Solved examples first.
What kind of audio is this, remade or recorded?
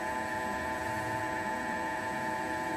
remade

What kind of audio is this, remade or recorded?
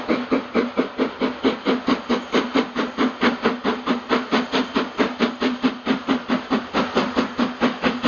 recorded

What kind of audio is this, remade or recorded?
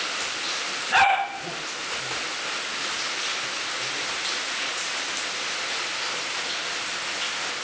recorded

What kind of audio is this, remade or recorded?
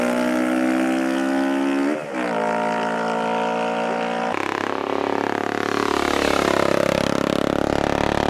recorded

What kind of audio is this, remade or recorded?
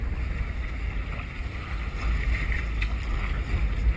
recorded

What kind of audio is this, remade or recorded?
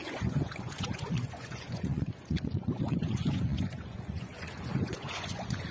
remade